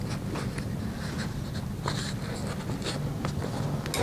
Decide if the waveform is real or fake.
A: real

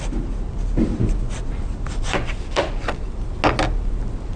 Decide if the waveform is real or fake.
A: real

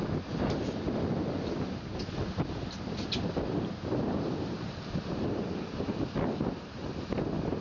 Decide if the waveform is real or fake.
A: real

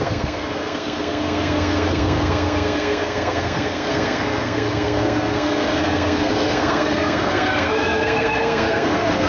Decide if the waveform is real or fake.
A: fake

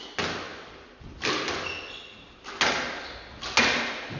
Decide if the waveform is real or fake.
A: real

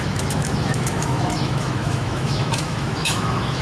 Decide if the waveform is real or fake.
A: fake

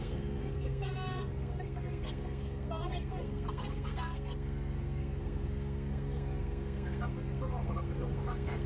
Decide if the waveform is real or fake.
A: fake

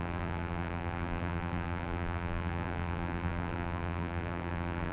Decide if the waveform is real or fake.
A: fake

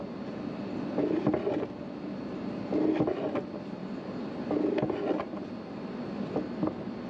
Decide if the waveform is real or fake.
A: real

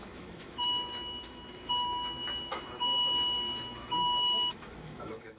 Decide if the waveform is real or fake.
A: fake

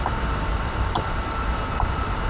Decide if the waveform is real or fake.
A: fake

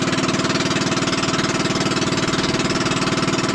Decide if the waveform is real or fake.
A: real